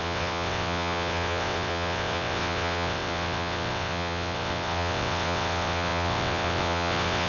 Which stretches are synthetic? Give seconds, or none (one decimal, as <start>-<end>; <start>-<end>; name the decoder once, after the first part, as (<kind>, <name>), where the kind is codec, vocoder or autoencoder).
0.0-7.3 (vocoder, WaveNeXt)